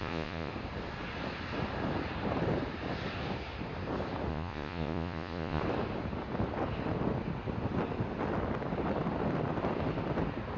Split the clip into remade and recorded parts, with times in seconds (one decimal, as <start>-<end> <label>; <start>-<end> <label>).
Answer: 0.0-0.5 remade; 0.5-4.3 recorded; 4.3-5.6 remade; 5.6-10.6 recorded